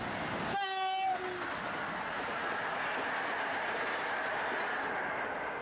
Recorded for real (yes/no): yes